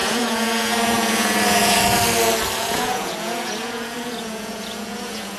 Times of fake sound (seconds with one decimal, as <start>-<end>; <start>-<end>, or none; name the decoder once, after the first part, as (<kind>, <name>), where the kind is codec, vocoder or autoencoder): 0.0-1.8 (vocoder, Vocos); 2.6-5.4